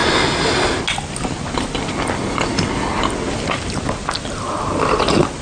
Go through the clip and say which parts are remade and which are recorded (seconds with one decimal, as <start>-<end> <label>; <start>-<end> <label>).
0.0-5.4 recorded